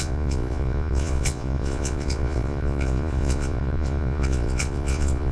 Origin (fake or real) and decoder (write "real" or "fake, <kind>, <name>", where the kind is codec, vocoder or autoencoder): fake, vocoder, Vocos